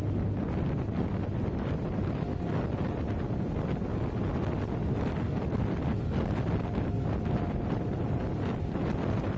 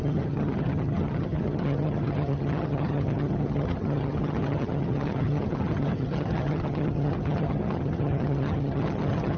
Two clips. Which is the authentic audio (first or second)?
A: first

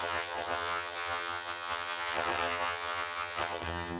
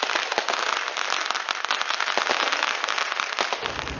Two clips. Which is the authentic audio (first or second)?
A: second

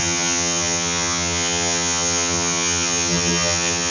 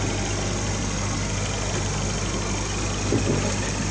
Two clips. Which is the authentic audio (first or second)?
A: second